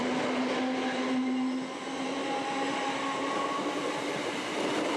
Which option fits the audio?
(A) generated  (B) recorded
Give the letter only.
B